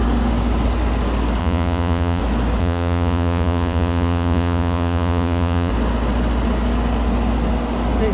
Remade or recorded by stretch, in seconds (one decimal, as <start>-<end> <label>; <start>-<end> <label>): 0.0-1.4 recorded; 1.4-2.2 remade; 2.2-2.6 recorded; 2.6-5.7 remade; 5.7-8.1 recorded